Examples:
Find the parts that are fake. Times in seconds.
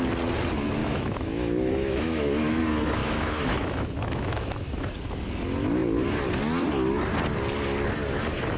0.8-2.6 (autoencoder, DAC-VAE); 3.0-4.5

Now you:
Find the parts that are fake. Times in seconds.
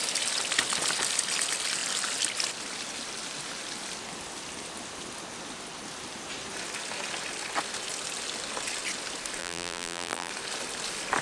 9.4-10.3 (vocoder, BigVGAN v2)